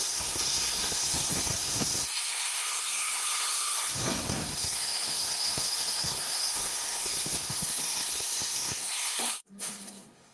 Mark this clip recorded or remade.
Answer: remade